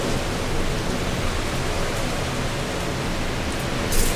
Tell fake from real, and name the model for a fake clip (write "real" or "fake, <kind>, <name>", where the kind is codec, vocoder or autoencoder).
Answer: real